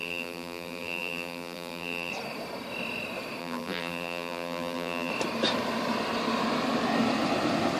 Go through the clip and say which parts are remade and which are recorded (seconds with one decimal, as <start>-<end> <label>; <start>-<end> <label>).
0.0-2.1 remade; 2.1-3.4 recorded; 3.4-5.1 remade; 5.1-7.8 recorded